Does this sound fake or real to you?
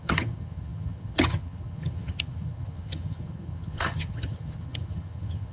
fake